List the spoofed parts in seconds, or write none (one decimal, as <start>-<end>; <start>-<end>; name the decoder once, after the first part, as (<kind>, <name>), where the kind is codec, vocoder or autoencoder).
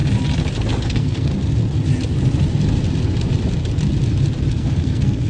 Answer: 0.8-1.3 (codec, SNAC); 4.5-5.3